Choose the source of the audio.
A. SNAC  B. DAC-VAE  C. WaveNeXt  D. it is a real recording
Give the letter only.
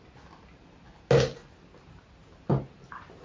D